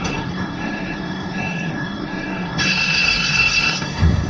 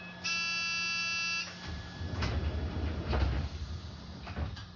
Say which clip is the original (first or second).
second